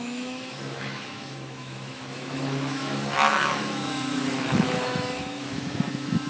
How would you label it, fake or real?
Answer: fake